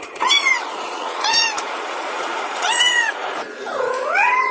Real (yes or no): no